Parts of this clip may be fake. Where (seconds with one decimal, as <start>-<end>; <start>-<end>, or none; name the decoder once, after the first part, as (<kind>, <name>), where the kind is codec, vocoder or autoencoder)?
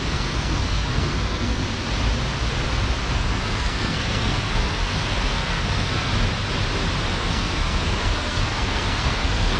0.0-1.6 (codec, SNAC); 3.1-6.1; 7.1-9.6